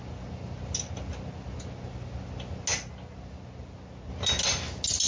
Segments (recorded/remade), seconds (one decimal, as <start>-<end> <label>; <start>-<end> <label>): 0.0-5.1 recorded